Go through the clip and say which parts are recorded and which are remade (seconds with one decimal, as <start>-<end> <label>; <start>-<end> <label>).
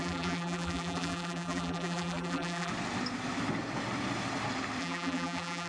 0.0-2.7 remade; 2.7-4.8 recorded; 4.8-5.7 remade